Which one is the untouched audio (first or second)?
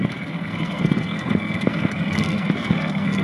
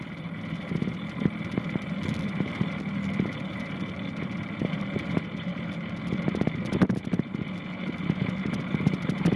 second